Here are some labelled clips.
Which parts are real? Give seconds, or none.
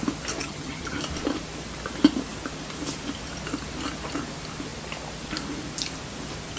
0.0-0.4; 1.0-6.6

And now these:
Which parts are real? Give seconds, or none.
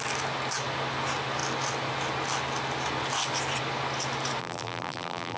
0.0-4.4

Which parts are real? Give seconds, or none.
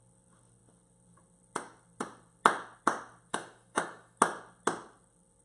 0.0-3.3; 4.2-5.4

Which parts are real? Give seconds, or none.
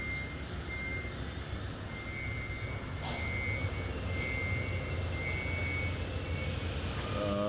0.0-7.5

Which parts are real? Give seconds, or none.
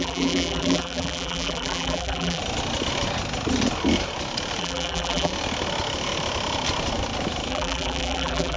2.4-4.6; 5.3-7.5